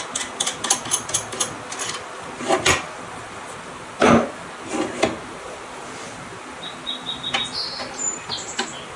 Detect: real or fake real